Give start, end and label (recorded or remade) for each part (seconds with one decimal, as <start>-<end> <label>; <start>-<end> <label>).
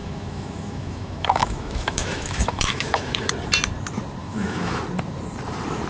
0.0-3.3 remade; 3.3-4.2 recorded; 4.2-4.8 remade; 4.8-5.9 recorded